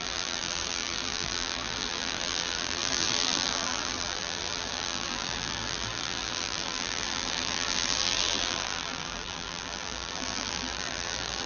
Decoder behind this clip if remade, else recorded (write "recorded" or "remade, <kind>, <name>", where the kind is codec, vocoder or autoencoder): remade, vocoder, BigVGAN v2